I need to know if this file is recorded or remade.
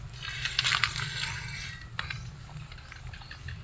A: recorded